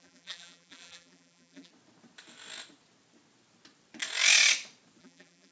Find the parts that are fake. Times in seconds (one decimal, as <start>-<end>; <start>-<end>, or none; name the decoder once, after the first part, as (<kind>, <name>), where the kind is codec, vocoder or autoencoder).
0.0-1.7 (vocoder, BigVGAN v2); 5.0-5.5